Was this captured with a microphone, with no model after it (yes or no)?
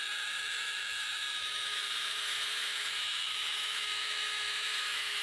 no